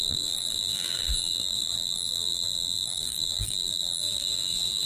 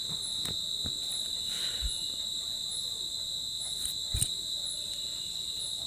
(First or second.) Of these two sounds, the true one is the second